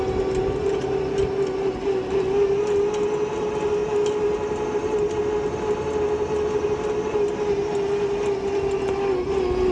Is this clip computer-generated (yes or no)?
no